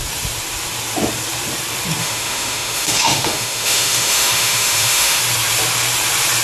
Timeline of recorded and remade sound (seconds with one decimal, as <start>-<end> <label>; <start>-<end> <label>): 0.0-2.0 recorded; 2.0-5.2 remade; 5.2-6.4 recorded